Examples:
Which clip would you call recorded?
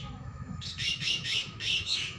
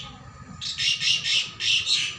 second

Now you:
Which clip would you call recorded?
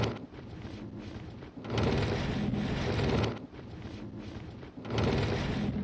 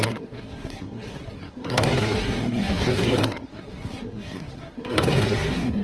first